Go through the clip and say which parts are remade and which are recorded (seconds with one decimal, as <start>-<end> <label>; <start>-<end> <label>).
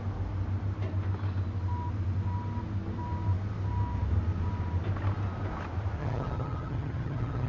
0.0-6.0 recorded; 6.0-7.5 remade